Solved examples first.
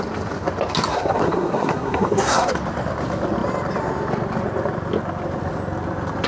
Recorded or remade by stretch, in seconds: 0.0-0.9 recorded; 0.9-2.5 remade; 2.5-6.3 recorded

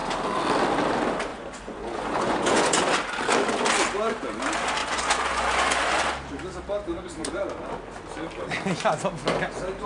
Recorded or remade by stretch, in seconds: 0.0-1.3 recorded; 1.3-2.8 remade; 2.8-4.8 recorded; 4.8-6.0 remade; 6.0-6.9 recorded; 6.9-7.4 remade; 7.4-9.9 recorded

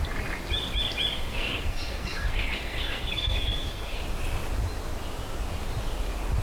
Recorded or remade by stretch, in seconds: 0.0-1.1 recorded; 1.1-4.0 remade; 4.0-6.4 recorded